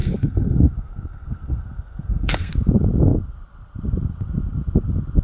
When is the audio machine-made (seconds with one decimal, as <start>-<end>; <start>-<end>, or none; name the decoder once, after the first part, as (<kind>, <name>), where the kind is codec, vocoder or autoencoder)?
0.0-2.5 (codec, SNAC)